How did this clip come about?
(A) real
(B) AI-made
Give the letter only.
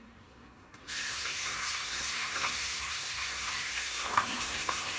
B